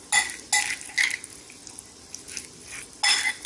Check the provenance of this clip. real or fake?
real